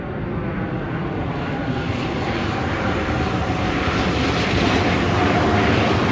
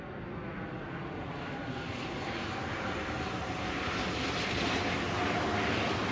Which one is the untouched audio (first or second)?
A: second